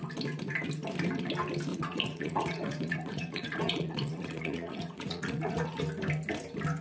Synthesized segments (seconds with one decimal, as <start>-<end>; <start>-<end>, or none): 1.7-5.8